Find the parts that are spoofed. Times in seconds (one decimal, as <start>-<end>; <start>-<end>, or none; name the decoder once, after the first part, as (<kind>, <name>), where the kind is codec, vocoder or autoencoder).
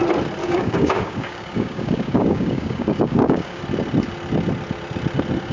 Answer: 0.4-3.6 (codec, DAC)